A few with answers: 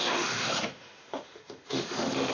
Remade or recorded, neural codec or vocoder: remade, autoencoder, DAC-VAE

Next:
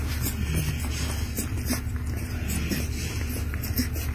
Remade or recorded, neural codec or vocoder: recorded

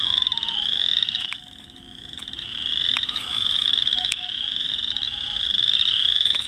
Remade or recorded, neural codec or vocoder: remade, autoencoder, DAC-VAE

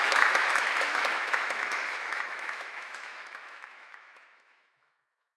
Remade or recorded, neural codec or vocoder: remade, autoencoder, DAC-VAE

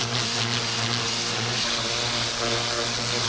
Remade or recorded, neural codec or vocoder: recorded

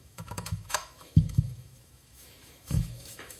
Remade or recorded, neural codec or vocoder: remade, autoencoder, DAC-VAE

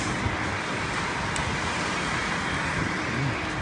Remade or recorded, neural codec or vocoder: recorded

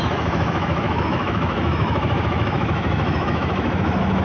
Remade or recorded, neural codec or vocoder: remade, autoencoder, DAC-VAE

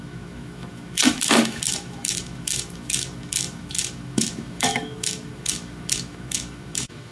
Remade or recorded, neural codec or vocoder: remade, autoencoder, DAC-VAE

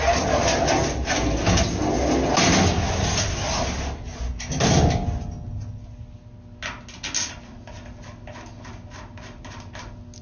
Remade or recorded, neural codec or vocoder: recorded